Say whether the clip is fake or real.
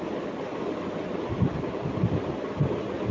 real